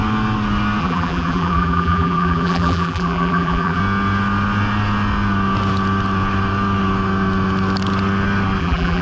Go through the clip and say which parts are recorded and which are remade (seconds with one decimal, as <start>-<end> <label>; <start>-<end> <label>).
0.0-0.8 recorded; 0.8-3.8 remade; 3.8-8.6 recorded; 8.6-9.0 remade